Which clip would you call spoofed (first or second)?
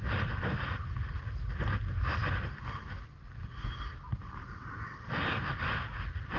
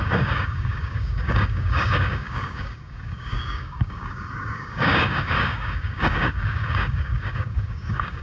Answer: second